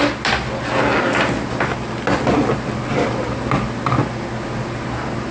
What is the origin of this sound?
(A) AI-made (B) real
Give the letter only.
B